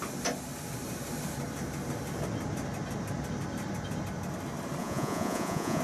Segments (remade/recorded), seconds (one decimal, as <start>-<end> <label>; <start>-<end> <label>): 0.0-4.8 recorded; 4.8-5.8 remade